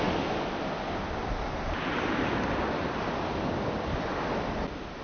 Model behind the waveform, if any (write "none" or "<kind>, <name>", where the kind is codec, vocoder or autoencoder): none